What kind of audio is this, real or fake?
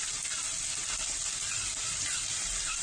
real